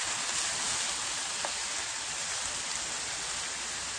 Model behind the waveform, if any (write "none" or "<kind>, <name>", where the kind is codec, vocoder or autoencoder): none